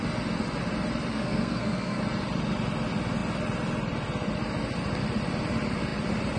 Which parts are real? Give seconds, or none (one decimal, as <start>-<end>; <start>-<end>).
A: 0.0-1.1; 2.0-6.4